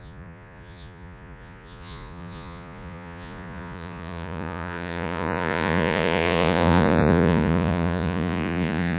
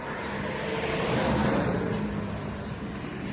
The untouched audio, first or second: second